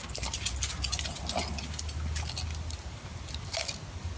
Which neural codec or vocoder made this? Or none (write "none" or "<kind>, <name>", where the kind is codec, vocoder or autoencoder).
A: none